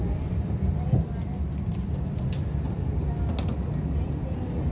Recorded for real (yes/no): yes